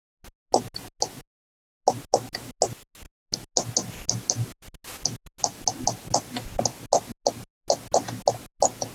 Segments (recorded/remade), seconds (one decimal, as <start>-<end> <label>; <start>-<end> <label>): 0.0-8.9 recorded